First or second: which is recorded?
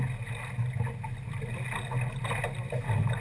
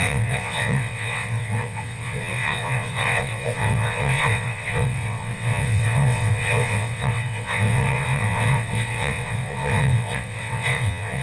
first